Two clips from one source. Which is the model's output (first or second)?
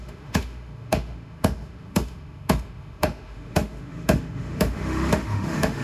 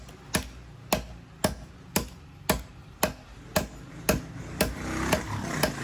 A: first